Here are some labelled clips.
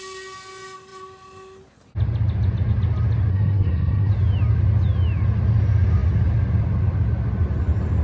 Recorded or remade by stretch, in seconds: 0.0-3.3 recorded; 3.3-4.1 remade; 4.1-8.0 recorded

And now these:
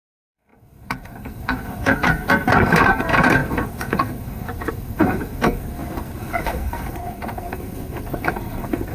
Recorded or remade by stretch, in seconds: 0.0-8.9 remade

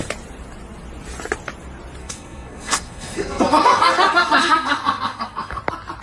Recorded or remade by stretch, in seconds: 0.0-2.0 recorded; 2.0-5.6 remade; 5.6-6.0 recorded